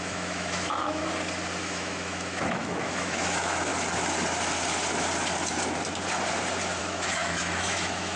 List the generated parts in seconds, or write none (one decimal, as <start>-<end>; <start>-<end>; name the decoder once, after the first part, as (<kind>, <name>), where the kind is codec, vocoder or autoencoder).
0.0-1.0 (autoencoder, DAC-VAE); 1.6-3.7; 6.8-8.2